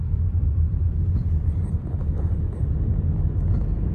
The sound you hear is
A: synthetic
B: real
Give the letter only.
A